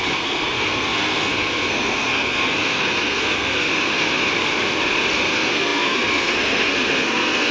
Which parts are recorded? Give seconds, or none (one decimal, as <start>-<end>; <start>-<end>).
3.7-5.1